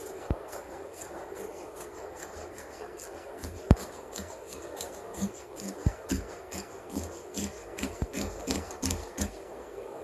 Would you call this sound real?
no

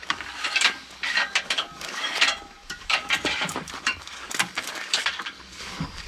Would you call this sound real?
no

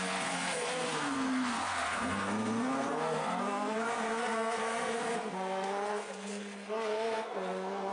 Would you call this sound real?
no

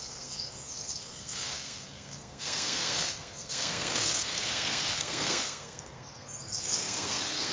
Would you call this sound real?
no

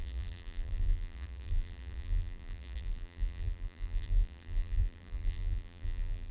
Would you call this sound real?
no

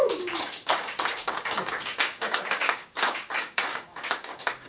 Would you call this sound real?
no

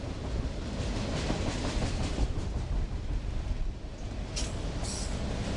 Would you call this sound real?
yes